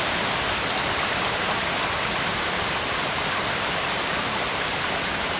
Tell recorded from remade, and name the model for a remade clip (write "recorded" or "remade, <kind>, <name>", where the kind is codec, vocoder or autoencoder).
recorded